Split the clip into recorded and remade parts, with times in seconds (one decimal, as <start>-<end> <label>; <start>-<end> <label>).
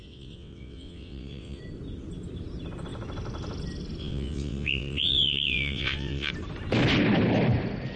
0.0-1.6 remade; 1.6-4.0 recorded; 4.0-6.3 remade; 6.3-8.0 recorded